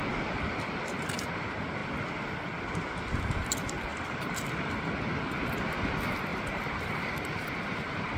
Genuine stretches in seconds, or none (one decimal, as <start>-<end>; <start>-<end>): 0.0-3.9; 4.7-6.3; 7.1-8.2

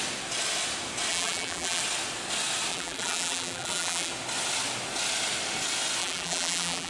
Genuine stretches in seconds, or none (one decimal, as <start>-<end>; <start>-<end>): 0.0-1.1; 1.8-2.7; 4.1-6.0

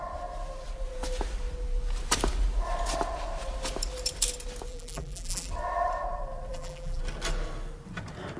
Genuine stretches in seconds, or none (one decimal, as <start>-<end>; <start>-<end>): 0.0-4.7; 5.5-6.5; 7.0-8.4

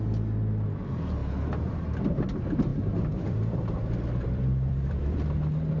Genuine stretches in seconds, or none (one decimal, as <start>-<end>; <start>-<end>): 0.0-1.2; 2.0-2.7

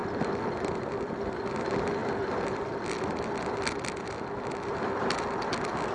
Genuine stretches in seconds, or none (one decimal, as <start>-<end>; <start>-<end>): 0.0-2.0; 5.5-5.9